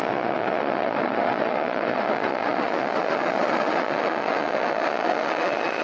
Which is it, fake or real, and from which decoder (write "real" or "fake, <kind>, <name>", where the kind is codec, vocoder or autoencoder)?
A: fake, vocoder, Vocos